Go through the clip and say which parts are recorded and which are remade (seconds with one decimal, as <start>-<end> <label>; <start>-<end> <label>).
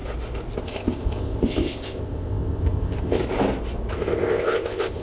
0.0-0.6 recorded; 0.6-3.2 remade; 3.2-3.9 recorded; 3.9-5.0 remade